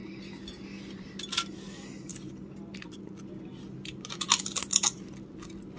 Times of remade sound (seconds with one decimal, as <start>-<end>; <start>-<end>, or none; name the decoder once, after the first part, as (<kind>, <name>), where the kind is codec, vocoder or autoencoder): none